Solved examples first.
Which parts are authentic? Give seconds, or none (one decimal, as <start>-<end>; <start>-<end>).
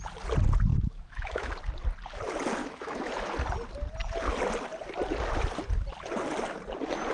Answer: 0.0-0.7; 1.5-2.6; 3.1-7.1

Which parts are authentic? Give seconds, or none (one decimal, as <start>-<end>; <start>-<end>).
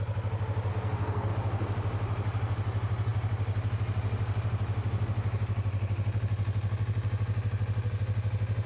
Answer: 0.0-0.7; 1.3-8.7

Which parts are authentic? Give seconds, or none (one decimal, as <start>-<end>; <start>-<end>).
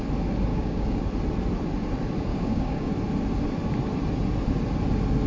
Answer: 0.0-0.5; 1.0-2.3; 2.9-5.3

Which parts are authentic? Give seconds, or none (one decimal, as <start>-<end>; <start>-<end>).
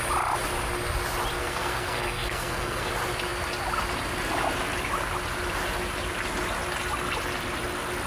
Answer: 0.0-1.4; 2.9-8.1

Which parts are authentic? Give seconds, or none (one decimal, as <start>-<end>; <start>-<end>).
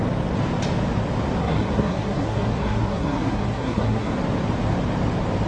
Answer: 0.0-1.4; 4.1-5.5